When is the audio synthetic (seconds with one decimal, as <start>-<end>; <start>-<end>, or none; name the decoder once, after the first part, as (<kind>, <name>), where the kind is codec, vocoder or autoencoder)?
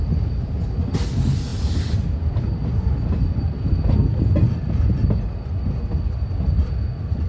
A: none